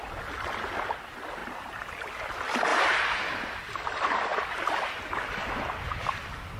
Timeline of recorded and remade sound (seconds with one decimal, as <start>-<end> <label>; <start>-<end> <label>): 0.0-1.4 recorded; 1.4-1.9 remade; 1.9-2.7 recorded; 2.7-3.6 remade; 3.6-6.6 recorded